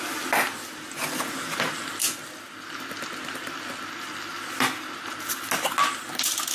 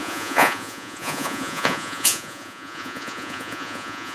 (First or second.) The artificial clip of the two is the second